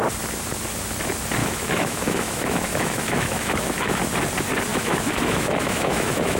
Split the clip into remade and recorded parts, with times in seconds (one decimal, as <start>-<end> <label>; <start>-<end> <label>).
0.0-1.4 recorded; 1.4-4.0 remade; 4.0-4.7 recorded; 4.7-6.4 remade